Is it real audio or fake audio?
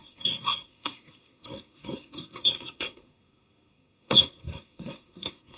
fake